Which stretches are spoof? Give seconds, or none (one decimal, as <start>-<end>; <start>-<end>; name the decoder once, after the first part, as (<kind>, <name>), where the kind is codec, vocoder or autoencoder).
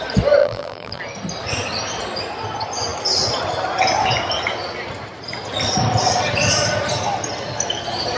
0.4-1.0 (vocoder, BigVGAN v2)